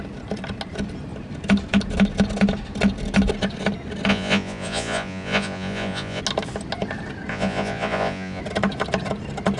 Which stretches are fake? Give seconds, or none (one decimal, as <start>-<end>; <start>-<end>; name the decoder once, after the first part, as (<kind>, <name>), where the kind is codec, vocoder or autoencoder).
4.1-6.2 (vocoder, Vocos); 7.3-8.4